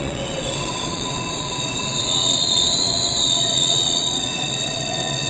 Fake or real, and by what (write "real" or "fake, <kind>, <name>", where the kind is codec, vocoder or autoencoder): fake, vocoder, WaveNeXt